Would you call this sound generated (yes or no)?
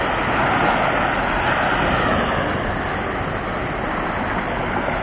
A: no